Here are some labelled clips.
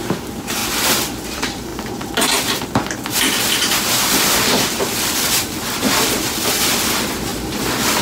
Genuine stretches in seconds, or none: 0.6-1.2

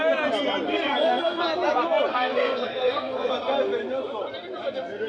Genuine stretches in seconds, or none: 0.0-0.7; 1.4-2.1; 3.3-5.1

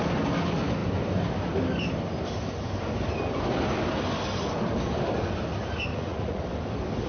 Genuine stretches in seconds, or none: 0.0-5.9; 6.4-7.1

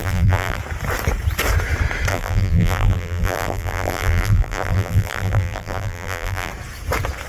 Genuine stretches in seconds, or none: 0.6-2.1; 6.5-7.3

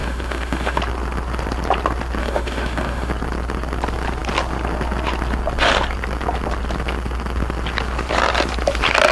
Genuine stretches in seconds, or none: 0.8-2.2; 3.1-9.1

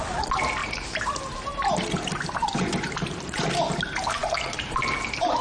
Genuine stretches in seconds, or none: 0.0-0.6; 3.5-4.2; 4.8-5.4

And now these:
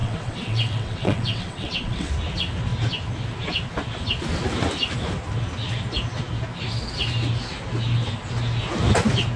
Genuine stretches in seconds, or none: 2.1-9.4

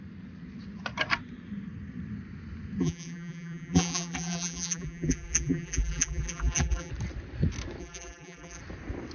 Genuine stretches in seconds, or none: 0.0-2.8; 6.9-7.8; 8.6-9.1